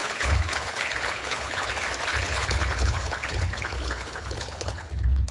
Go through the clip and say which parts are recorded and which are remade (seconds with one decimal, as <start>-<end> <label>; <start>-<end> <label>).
0.0-1.7 remade; 1.7-2.1 recorded; 2.1-5.3 remade